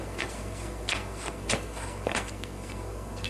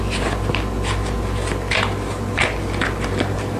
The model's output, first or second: first